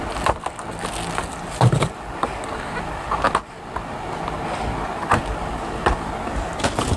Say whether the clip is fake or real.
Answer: real